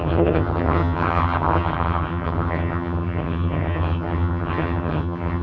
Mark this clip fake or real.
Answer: fake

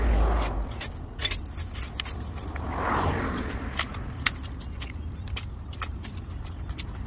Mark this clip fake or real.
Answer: real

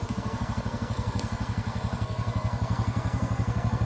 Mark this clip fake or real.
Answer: fake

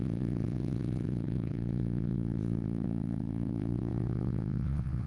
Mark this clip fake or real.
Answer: fake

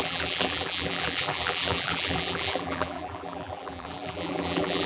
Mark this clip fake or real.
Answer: fake